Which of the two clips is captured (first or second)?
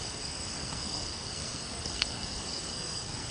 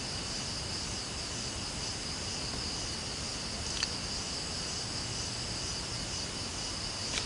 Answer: second